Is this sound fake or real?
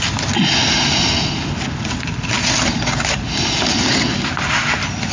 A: real